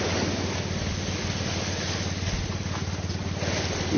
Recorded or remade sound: recorded